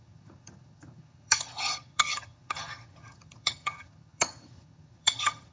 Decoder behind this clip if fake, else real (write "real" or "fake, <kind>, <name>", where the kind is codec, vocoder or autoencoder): fake, vocoder, HiFi-GAN